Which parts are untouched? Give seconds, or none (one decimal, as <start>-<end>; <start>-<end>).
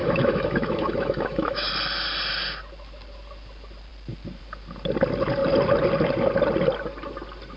1.7-7.6